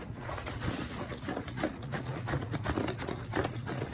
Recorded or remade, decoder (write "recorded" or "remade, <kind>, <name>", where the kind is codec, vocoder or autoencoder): remade, vocoder, Vocos